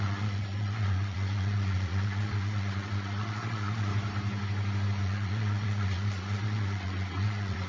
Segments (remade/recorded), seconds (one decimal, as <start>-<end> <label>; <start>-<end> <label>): 0.0-3.9 remade; 3.9-5.0 recorded; 5.0-7.7 remade